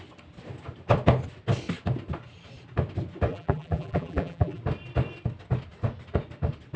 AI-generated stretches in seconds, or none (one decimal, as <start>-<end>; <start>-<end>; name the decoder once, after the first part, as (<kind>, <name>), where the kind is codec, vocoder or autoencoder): 3.3-4.6 (vocoder, BigVGAN v2)